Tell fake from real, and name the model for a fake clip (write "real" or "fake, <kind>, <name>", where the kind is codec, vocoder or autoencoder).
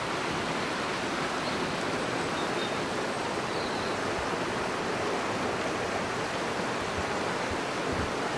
real